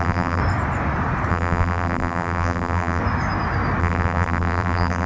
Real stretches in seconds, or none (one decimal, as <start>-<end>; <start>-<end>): 0.4-1.3; 3.0-3.8